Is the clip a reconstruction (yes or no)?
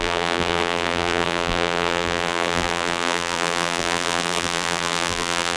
yes